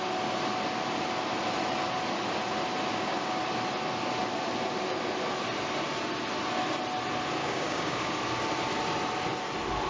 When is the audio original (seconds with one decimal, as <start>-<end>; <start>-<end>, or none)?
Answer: 0.0-2.9; 3.4-7.4; 8.1-9.9